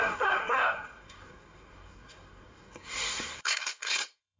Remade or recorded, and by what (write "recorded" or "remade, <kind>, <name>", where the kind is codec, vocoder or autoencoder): remade, codec, SNAC